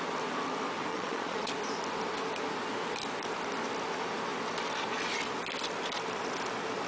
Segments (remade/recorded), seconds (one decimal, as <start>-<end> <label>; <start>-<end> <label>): 0.0-0.9 recorded; 0.9-1.5 remade; 1.5-6.9 recorded